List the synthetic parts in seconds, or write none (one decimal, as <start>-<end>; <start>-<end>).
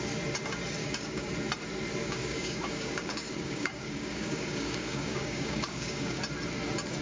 0.8-1.3; 2.0-6.2